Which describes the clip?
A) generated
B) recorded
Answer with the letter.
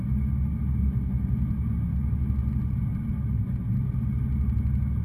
B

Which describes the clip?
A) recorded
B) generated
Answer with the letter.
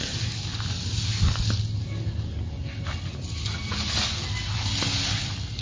A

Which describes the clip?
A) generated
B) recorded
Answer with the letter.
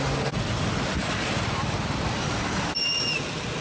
B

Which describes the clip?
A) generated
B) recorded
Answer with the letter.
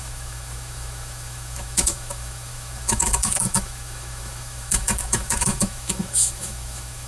A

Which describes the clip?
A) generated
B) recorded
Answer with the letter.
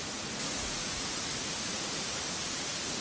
A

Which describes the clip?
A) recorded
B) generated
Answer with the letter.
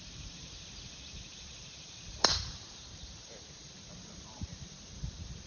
B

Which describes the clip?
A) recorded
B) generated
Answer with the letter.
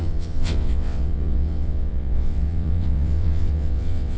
B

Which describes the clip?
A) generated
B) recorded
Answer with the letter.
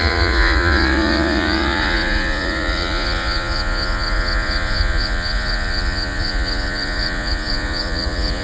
A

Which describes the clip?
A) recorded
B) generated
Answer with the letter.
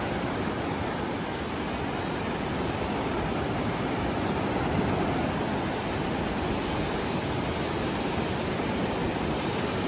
A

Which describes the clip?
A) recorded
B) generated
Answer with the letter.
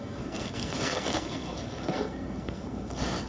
B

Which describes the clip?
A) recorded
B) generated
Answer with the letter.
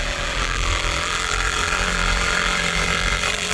B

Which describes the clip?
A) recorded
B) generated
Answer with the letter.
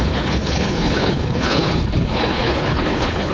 B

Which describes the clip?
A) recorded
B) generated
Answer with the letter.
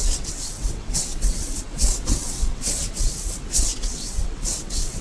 B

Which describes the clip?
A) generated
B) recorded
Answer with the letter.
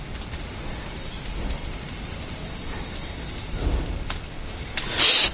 B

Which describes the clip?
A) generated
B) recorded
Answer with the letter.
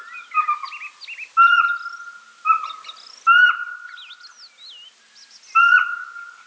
B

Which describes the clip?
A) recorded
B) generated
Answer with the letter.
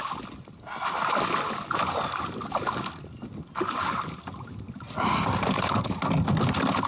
A